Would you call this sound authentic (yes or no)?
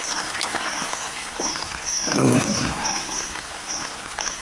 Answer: no